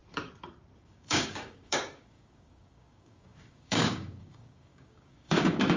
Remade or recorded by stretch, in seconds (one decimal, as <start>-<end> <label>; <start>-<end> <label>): 0.0-0.8 recorded; 0.8-5.8 remade